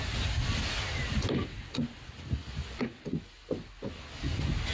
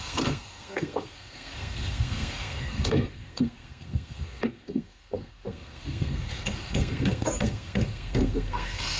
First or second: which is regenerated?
second